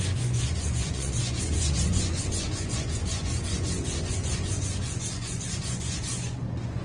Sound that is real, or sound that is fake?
fake